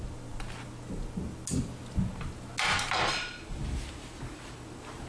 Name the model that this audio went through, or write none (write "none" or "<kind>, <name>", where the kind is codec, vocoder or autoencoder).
none